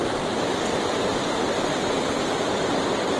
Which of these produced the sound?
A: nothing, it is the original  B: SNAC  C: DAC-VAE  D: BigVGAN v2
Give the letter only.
A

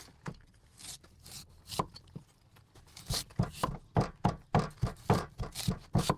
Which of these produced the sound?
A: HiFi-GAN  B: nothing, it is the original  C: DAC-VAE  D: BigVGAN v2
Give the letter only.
D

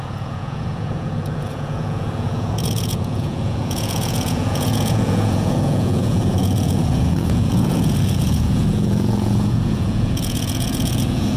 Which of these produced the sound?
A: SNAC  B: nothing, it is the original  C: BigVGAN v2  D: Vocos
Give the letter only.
D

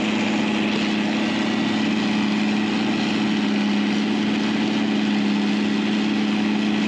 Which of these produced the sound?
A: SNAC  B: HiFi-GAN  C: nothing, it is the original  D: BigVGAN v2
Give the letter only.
C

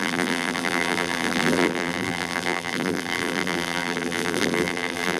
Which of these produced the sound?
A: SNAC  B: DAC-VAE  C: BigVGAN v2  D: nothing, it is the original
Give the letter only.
C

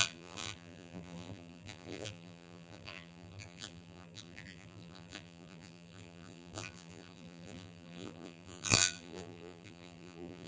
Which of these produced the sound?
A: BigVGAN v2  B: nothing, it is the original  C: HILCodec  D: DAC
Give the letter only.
A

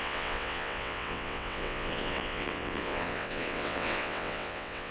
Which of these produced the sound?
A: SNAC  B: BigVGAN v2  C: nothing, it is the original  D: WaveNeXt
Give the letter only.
D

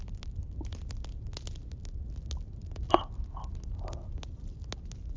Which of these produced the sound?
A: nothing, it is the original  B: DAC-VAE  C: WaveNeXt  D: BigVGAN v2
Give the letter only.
A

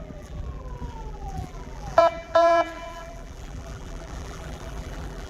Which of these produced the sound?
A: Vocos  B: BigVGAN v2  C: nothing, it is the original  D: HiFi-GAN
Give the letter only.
B